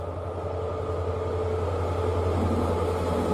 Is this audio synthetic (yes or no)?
no